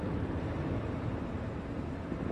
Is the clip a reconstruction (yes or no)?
no